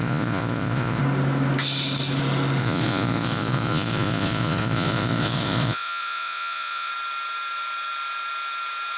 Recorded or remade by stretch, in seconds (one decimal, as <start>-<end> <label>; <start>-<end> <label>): 0.0-1.0 remade; 1.0-2.6 recorded; 2.6-6.9 remade; 6.9-9.0 recorded